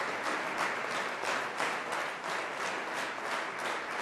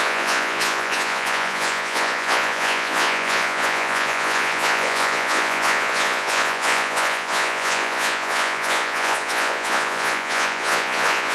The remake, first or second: second